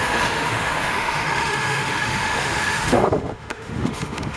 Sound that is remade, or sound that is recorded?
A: remade